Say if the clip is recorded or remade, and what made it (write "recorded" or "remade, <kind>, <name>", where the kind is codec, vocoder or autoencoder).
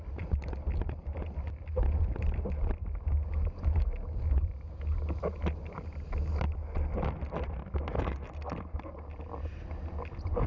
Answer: recorded